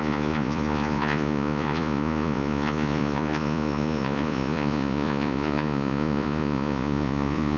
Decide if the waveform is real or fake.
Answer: fake